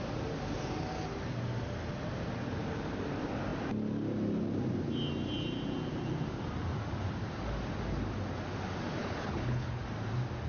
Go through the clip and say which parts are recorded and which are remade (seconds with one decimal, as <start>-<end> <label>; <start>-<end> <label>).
0.0-9.0 recorded; 9.0-9.8 remade; 9.8-10.5 recorded